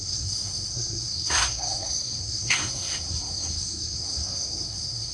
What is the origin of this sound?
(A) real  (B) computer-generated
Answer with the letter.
B